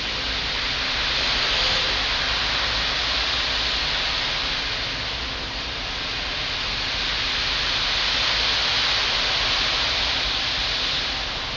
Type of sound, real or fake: real